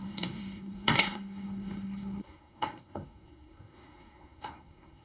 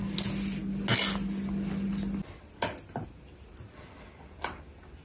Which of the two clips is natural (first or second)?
second